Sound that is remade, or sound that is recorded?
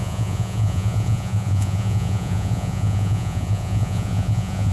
remade